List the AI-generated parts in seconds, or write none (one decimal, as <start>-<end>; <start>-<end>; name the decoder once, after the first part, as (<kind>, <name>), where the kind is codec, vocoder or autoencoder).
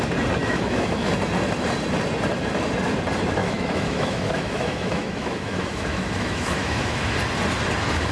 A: 0.4-1.1 (autoencoder, DAC-VAE); 3.4-7.1